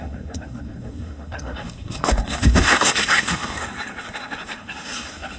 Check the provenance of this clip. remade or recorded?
remade